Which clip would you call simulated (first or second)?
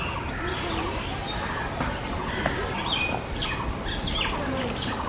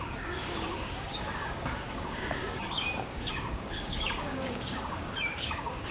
second